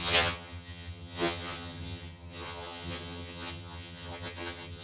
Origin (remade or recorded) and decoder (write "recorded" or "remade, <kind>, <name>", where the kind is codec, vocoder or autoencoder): remade, vocoder, HiFi-GAN